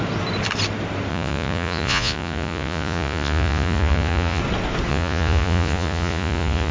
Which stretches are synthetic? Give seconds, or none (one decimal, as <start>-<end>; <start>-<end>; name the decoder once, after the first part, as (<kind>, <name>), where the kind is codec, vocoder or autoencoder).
1.1-4.4 (vocoder, Vocos); 4.9-6.7